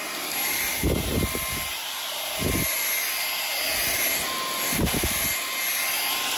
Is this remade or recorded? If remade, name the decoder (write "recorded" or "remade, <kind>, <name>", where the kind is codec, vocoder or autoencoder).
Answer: recorded